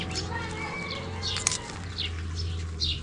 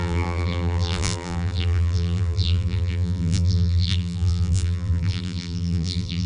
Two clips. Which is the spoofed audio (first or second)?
second